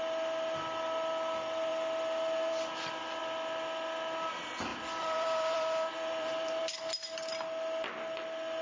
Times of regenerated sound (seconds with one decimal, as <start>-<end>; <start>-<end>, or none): 4.7-6.6